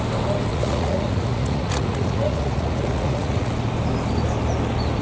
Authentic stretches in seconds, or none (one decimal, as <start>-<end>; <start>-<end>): 0.0-0.5; 3.5-5.0